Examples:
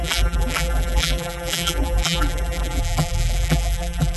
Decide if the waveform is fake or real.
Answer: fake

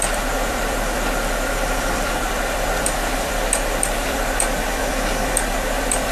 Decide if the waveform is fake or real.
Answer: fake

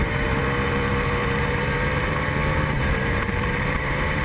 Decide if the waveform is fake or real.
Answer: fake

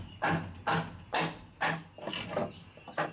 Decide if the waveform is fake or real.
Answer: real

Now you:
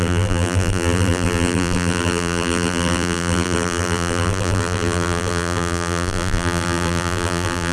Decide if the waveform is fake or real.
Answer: fake